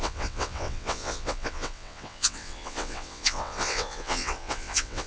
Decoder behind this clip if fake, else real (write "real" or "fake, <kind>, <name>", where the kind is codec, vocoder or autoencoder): fake, vocoder, WaveNeXt